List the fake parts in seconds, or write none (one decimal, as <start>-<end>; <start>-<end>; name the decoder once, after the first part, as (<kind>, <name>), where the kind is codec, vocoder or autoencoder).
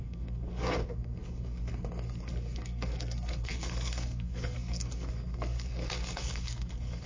0.0-7.1 (codec, SNAC)